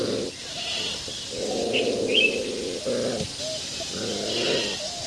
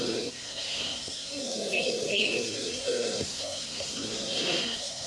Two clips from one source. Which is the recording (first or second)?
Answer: first